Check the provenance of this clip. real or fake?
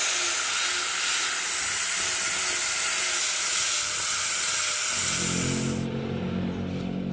real